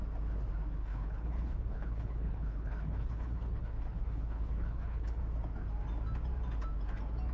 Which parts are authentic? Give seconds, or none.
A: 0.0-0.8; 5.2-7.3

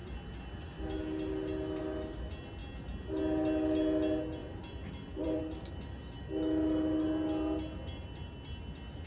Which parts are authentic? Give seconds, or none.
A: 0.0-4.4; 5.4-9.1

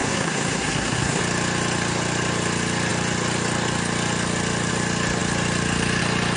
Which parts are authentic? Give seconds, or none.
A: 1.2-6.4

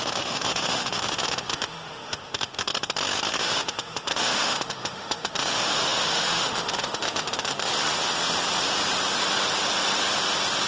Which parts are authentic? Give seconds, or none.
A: 2.7-3.3; 7.7-10.7